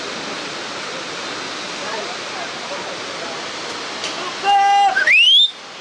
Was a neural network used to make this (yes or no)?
no